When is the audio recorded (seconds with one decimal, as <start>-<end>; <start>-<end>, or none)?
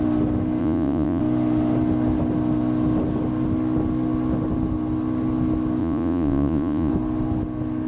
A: 0.0-0.6; 1.2-5.8; 6.9-7.9